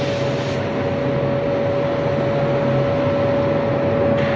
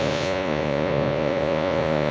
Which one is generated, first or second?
second